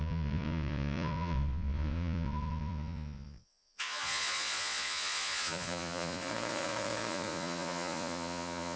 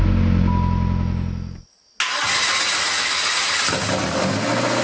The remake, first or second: first